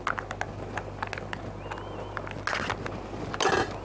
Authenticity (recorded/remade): recorded